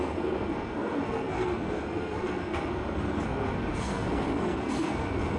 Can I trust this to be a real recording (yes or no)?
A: no